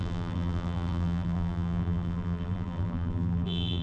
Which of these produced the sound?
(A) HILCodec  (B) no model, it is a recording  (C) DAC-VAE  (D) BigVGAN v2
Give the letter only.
D